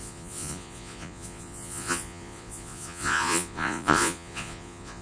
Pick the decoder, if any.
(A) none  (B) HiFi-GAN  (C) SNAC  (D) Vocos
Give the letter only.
D